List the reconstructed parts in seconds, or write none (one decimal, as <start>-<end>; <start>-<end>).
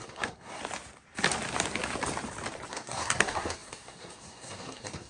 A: 0.0-0.6; 2.7-5.1